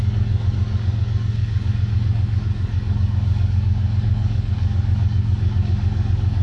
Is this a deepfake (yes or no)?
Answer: yes